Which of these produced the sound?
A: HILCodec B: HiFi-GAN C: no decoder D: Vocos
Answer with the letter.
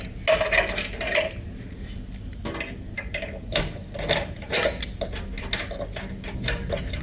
C